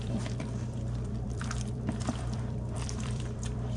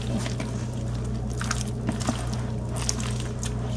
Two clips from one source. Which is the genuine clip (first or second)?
second